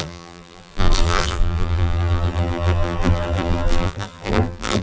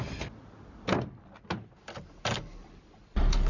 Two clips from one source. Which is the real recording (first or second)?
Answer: second